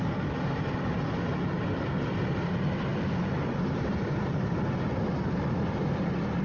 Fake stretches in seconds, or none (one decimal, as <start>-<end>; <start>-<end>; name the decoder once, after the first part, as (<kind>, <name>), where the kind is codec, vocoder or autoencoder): none